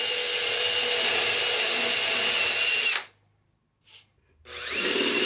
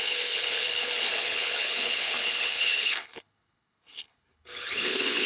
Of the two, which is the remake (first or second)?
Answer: second